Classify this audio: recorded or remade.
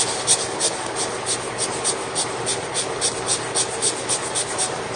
recorded